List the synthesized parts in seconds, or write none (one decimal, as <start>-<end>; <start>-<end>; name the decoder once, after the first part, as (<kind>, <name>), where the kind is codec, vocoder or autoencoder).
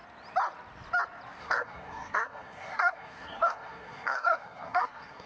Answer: 1.4-5.3 (codec, SNAC)